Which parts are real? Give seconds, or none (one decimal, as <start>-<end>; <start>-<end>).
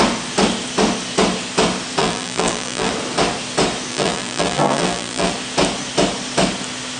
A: 0.0-2.0; 2.9-3.9; 5.3-7.0